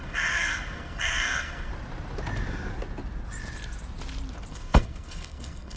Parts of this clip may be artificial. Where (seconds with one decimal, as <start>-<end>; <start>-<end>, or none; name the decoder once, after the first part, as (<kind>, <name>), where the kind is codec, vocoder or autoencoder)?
0.0-1.7 (codec, SNAC); 4.5-5.8